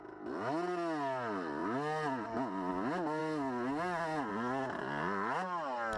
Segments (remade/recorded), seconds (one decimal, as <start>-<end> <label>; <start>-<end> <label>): 0.0-6.0 recorded